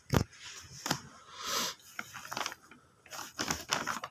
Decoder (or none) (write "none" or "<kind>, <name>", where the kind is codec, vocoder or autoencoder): none